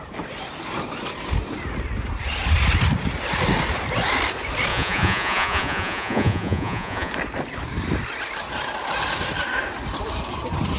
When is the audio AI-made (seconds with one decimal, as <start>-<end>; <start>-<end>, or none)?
4.7-7.1